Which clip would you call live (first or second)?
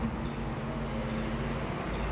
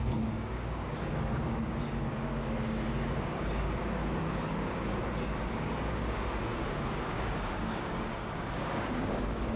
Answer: first